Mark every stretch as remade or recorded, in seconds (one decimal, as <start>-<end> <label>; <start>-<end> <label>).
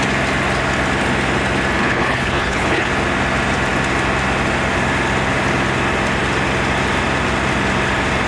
0.0-1.8 recorded; 1.8-2.9 remade; 2.9-8.3 recorded